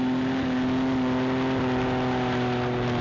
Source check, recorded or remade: recorded